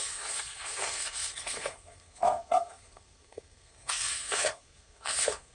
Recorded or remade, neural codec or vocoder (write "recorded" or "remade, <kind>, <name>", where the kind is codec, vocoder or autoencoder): remade, codec, SNAC